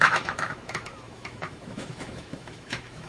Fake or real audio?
fake